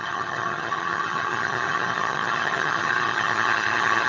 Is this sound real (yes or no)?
no